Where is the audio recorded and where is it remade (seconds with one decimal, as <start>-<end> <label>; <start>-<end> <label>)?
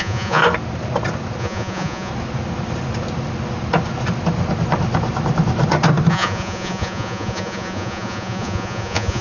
0.0-0.4 remade; 0.4-1.4 recorded; 1.4-2.1 remade; 2.1-6.1 recorded; 6.1-9.2 remade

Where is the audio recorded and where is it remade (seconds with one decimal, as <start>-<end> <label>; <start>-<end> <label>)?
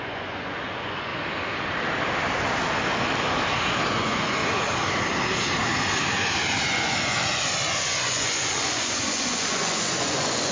0.0-1.1 remade; 1.1-3.9 recorded; 3.9-4.4 remade; 4.4-6.7 recorded; 6.7-10.5 remade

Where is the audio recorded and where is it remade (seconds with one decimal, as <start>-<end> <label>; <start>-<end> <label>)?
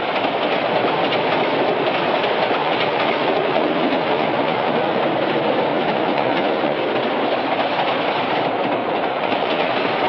0.0-2.6 recorded; 2.6-5.0 remade; 5.0-5.7 recorded; 5.7-6.8 remade; 6.8-8.8 recorded; 8.8-9.7 remade; 9.7-10.1 recorded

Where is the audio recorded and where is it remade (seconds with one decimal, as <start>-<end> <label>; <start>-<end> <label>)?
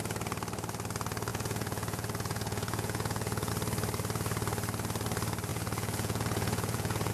0.0-1.3 recorded; 1.3-3.5 remade; 3.5-5.5 recorded; 5.5-7.1 remade